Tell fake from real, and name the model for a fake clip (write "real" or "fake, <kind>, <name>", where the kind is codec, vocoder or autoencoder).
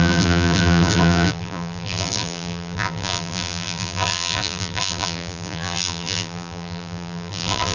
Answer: fake, vocoder, BigVGAN v2